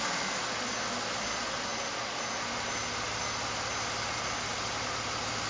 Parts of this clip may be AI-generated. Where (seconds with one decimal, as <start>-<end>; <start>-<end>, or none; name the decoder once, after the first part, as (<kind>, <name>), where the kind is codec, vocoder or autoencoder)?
none